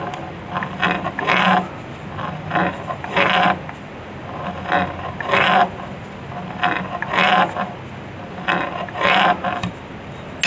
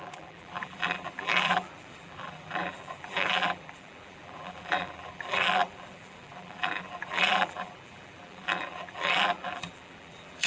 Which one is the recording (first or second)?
first